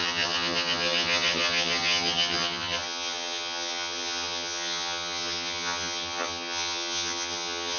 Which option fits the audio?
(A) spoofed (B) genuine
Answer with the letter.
A